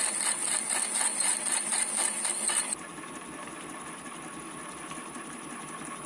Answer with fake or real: real